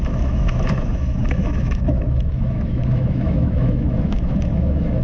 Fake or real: fake